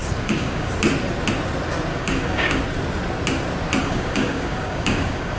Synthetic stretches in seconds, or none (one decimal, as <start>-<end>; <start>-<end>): 0.0-0.7; 1.9-2.6; 3.8-5.4